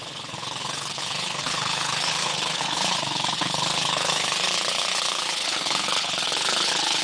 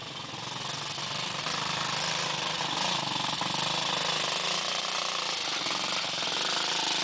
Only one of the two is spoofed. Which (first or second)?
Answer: first